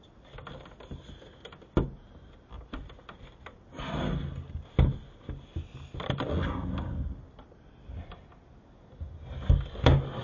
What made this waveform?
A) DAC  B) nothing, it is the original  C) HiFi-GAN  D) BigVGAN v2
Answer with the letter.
B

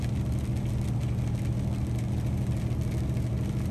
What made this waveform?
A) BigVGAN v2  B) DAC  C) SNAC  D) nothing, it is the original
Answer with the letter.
D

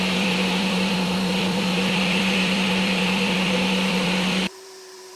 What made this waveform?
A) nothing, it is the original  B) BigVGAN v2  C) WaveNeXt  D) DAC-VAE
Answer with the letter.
B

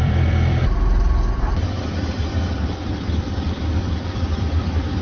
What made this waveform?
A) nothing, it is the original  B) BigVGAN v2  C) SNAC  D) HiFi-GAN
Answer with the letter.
B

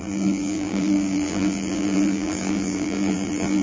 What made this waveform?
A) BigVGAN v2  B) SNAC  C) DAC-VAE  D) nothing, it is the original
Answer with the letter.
A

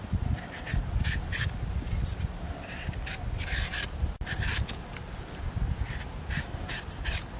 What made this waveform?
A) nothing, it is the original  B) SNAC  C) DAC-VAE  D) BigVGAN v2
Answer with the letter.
A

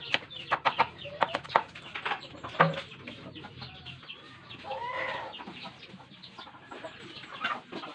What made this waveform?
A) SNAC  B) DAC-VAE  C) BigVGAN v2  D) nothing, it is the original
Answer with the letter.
D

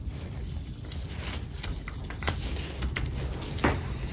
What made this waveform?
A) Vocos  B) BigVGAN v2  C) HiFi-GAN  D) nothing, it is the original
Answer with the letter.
D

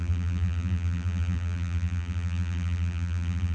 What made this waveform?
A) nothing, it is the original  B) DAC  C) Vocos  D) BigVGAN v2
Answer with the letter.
D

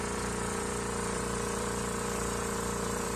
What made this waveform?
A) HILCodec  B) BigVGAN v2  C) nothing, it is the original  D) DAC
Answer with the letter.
B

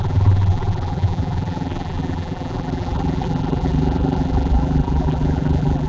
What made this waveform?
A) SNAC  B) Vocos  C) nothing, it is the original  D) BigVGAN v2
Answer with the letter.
D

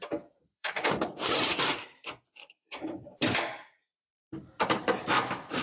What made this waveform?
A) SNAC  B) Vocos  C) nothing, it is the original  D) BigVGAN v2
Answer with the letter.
D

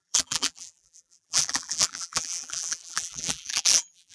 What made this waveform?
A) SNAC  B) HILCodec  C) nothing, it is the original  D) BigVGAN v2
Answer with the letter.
D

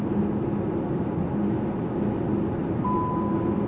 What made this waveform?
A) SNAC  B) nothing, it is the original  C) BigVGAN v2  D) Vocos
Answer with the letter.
B